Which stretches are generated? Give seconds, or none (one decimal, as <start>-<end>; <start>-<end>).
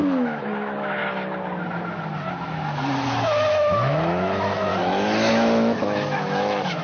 0.0-1.0; 3.5-4.7; 5.3-6.8